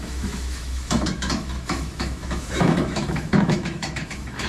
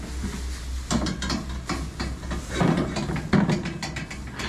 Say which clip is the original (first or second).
second